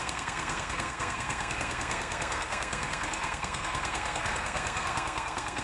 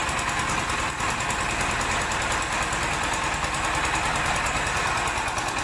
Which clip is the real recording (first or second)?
second